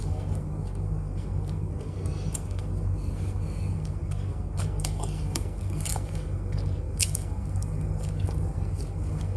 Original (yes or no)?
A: no